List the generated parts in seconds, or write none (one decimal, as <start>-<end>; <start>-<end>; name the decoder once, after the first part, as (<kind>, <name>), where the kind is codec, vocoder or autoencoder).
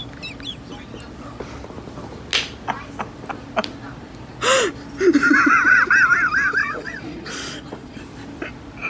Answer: 6.6-8.0 (vocoder, Vocos)